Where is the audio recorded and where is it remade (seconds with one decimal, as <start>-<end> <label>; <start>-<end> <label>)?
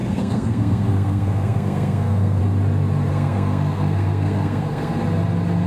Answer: 0.0-2.4 remade; 2.4-3.1 recorded; 3.1-4.9 remade; 4.9-5.7 recorded